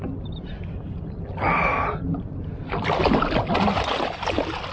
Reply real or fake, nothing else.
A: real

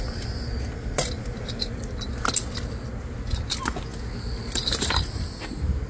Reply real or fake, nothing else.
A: real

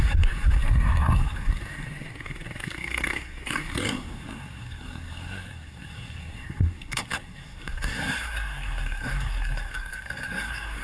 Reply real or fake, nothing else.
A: fake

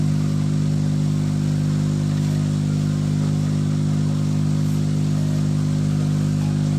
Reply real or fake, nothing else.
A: real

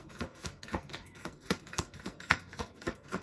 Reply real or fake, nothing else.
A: fake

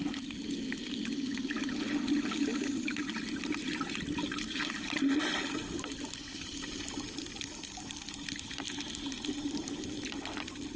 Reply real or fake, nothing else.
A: real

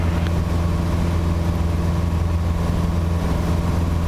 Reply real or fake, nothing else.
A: real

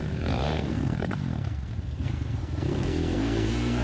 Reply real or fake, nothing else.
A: fake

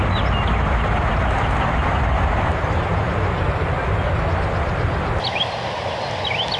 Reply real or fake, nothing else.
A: real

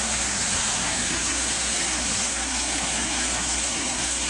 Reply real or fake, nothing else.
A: fake